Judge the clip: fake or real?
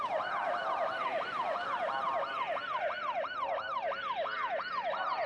real